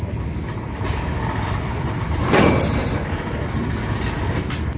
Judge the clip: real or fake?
real